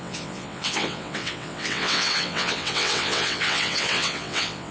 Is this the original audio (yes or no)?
no